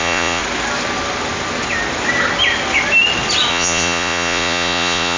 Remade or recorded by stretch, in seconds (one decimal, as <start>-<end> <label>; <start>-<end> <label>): 0.0-0.4 remade; 0.4-3.5 recorded; 3.5-5.2 remade